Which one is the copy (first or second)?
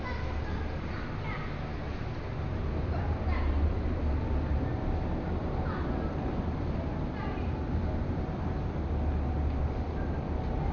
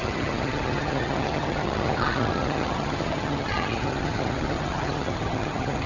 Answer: second